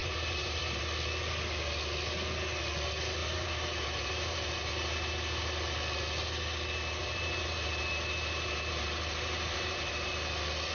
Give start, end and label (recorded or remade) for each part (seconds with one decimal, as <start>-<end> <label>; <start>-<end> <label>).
0.0-0.8 remade; 0.8-3.2 recorded; 3.2-4.7 remade; 4.7-7.0 recorded; 7.0-10.1 remade; 10.1-10.7 recorded